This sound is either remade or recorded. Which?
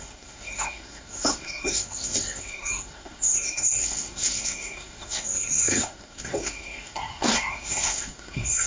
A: remade